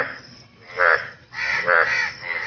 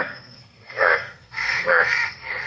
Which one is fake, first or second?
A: second